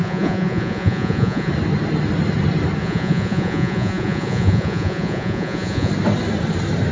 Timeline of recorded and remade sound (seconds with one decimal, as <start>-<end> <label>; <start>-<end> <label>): 0.0-1.5 remade; 1.5-2.8 recorded; 2.8-5.9 remade; 5.9-6.9 recorded